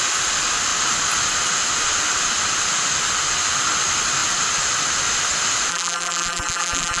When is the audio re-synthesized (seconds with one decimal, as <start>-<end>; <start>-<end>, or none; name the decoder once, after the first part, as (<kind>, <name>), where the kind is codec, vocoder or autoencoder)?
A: 5.7-7.0 (vocoder, BigVGAN v2)